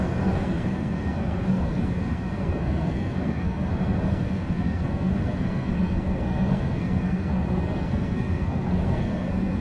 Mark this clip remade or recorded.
remade